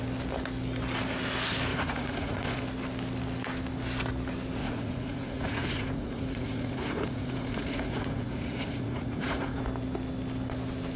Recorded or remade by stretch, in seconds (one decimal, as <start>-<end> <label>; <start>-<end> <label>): 0.0-1.7 recorded; 1.7-2.6 remade; 2.6-4.6 recorded; 4.6-9.6 remade; 9.6-11.0 recorded